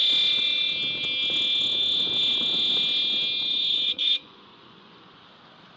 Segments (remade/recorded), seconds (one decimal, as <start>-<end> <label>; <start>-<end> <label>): 0.0-3.7 recorded; 3.7-5.2 remade; 5.2-5.8 recorded